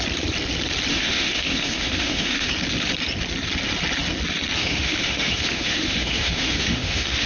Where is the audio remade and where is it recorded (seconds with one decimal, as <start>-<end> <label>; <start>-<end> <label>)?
0.0-0.9 recorded; 0.9-2.5 remade; 2.5-4.6 recorded; 4.6-7.3 remade